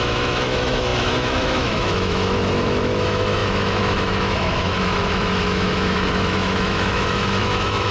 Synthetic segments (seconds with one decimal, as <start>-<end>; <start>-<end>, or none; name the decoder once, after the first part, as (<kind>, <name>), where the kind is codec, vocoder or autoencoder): 0.0-7.9 (autoencoder, DAC-VAE)